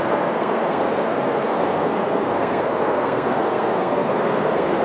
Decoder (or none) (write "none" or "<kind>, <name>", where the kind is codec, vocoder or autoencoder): codec, SNAC